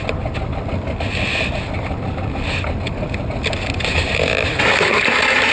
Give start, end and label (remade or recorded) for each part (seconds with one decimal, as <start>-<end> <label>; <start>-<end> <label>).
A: 0.0-5.5 recorded